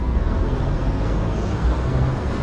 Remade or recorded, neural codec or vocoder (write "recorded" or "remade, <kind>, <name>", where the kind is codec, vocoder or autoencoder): remade, codec, SNAC